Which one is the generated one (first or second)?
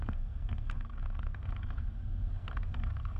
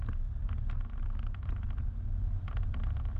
first